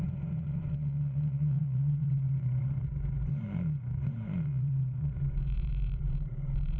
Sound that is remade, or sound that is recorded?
remade